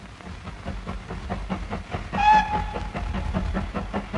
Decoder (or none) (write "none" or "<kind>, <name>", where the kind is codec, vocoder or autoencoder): none